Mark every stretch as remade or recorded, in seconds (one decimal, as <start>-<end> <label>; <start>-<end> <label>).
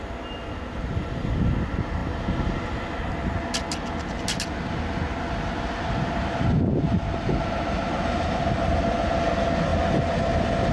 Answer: 0.0-10.7 recorded